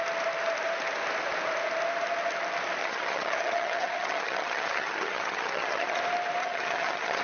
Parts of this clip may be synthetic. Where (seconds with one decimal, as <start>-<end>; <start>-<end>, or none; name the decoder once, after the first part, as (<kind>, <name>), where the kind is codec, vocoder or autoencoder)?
2.8-6.0 (vocoder, HiFi-GAN); 6.4-7.2